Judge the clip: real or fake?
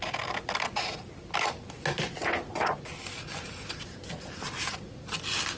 real